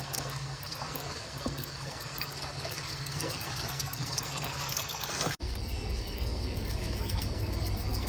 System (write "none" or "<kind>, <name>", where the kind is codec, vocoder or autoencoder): codec, SNAC